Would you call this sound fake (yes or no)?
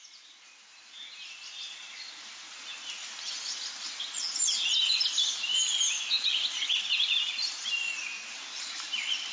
no